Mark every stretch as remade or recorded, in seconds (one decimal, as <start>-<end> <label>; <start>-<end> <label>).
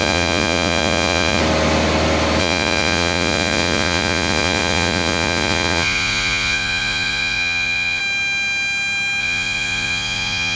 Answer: 0.0-1.4 remade; 1.4-2.4 recorded; 2.4-8.0 remade; 8.0-9.2 recorded; 9.2-10.6 remade